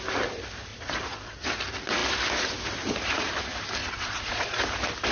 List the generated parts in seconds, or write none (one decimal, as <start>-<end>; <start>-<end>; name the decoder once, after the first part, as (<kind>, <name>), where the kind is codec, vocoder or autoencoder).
0.7-1.4 (vocoder, Vocos); 3.8-4.6